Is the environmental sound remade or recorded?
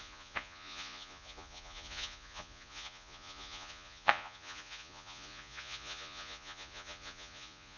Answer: remade